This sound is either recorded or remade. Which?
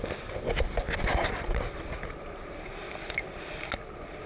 recorded